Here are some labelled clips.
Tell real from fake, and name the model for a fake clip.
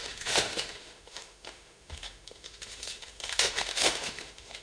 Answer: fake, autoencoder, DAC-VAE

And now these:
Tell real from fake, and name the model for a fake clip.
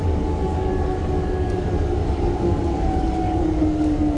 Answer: fake, codec, DAC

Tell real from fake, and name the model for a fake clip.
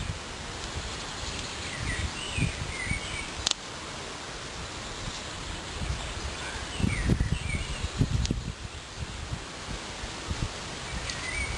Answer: real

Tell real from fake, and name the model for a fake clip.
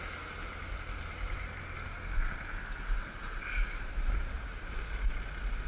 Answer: real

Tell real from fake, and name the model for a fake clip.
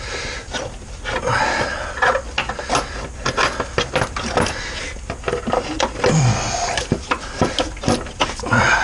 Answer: real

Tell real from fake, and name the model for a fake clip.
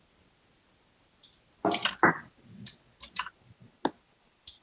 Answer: real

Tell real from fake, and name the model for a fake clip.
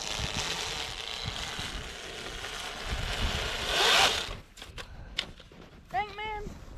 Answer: real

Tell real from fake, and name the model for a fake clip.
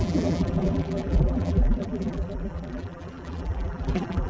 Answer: fake, vocoder, BigVGAN v2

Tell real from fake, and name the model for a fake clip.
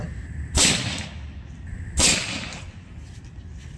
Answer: real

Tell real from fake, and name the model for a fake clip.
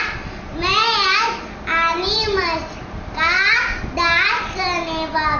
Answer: real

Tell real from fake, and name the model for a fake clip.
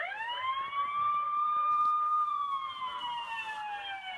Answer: fake, vocoder, BigVGAN v2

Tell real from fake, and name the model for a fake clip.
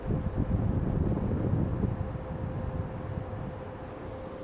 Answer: real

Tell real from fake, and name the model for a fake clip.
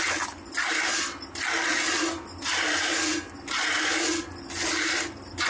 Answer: real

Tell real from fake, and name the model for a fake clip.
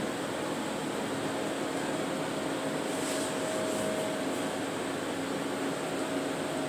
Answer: real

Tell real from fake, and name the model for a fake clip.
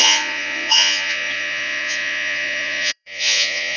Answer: fake, vocoder, Vocos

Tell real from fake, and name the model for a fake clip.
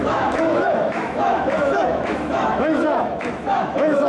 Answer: fake, autoencoder, DAC-VAE